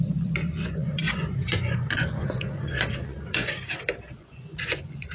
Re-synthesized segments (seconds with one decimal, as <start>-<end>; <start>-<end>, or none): 0.4-3.5; 4.2-5.1